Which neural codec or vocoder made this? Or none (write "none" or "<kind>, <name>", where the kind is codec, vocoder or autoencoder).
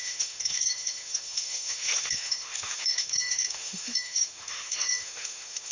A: autoencoder, DAC-VAE